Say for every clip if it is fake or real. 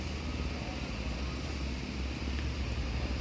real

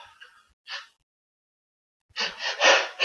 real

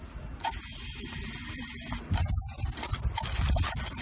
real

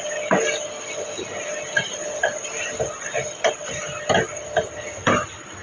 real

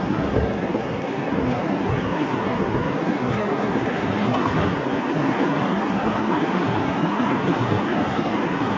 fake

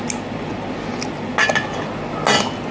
real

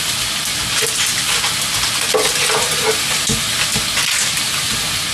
real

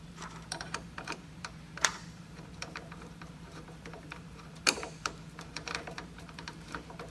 fake